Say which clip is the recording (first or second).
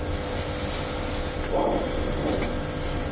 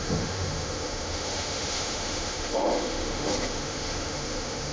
first